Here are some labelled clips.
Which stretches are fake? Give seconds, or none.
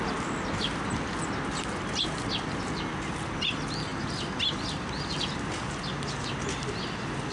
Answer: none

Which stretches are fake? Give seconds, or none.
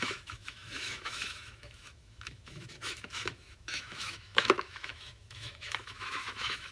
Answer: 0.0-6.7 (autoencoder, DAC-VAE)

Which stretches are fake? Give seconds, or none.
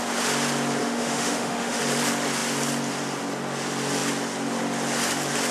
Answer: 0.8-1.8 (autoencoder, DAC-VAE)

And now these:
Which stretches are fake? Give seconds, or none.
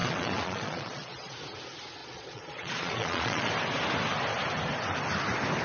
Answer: 0.0-1.3 (vocoder, Vocos); 2.0-3.5